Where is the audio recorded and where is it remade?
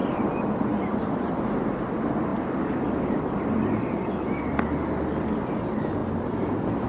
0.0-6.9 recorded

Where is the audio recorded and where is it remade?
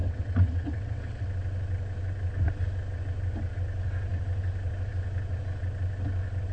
0.0-1.3 remade; 1.3-6.5 recorded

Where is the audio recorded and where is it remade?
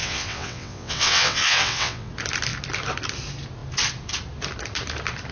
0.0-2.1 remade; 2.1-5.3 recorded